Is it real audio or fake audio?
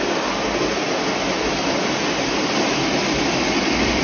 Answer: real